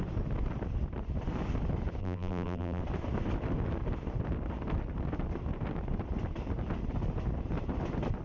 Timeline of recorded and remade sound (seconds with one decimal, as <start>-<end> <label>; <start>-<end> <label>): 0.0-2.0 recorded; 2.0-2.8 remade; 2.8-8.2 recorded